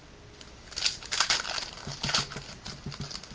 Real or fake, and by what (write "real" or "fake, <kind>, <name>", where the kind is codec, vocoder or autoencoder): real